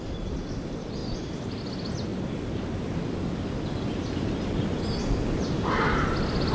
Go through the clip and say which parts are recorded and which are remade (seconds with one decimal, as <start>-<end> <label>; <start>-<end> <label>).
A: 0.0-6.5 recorded